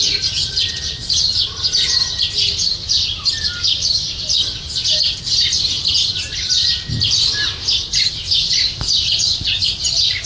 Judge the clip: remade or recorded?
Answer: recorded